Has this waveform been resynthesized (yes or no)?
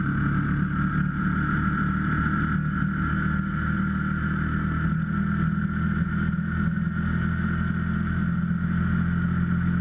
no